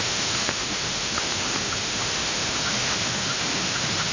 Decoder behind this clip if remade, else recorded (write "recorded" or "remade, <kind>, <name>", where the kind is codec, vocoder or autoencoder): remade, autoencoder, DAC-VAE